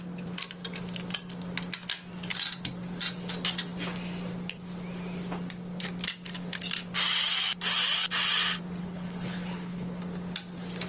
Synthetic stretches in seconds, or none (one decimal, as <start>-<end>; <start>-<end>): 8.8-10.0